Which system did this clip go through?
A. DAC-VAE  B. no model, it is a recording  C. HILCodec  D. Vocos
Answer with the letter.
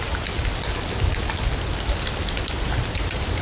B